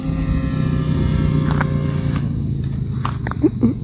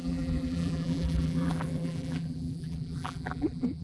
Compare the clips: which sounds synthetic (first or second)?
second